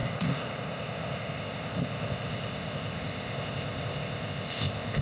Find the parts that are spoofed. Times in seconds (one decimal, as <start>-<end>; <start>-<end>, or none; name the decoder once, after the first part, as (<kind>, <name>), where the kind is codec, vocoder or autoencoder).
0.0-5.0 (codec, ZipCodec)